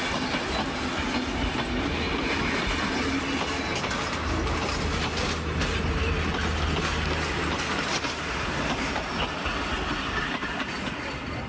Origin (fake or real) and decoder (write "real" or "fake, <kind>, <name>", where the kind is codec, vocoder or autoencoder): real